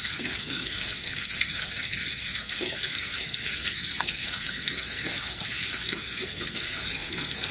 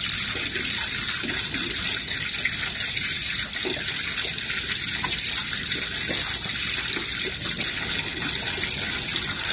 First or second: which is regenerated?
first